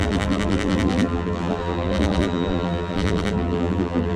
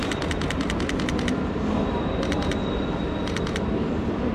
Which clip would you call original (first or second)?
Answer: second